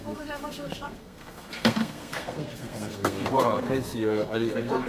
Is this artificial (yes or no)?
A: yes